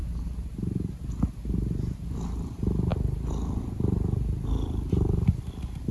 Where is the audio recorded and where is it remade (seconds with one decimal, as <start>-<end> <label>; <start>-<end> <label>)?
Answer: 0.0-0.9 remade; 0.9-5.9 recorded